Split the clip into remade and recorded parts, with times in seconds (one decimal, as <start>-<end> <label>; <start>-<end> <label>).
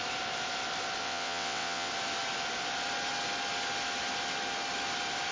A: 0.0-1.0 recorded; 1.0-1.9 remade; 1.9-5.3 recorded